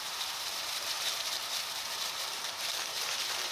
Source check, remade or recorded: remade